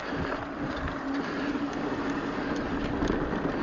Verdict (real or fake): real